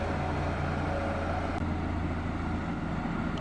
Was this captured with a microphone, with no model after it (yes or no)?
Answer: yes